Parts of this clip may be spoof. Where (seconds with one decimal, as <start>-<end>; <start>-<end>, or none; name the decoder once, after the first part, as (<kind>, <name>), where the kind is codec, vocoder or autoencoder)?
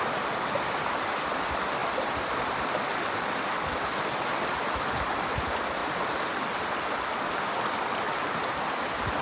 0.0-5.8 (vocoder, BigVGAN v2); 6.5-9.2